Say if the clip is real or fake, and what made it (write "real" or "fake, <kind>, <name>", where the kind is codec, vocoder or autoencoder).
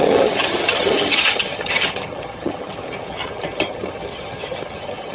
fake, vocoder, HiFi-GAN